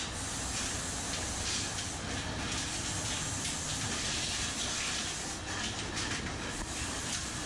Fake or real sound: real